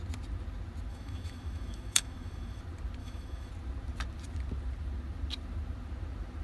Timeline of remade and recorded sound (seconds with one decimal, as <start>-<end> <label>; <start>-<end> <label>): 0.0-0.9 recorded; 0.9-2.6 remade; 2.6-3.0 recorded; 3.0-3.5 remade; 3.5-6.4 recorded